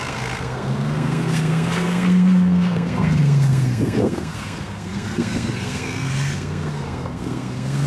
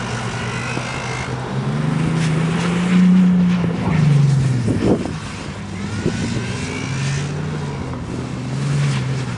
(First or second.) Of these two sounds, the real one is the second